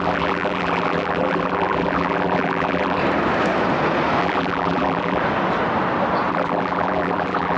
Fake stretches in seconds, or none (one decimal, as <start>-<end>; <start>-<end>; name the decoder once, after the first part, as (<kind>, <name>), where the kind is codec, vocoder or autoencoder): 0.0-3.0 (vocoder, BigVGAN v2); 4.2-5.2; 6.3-7.6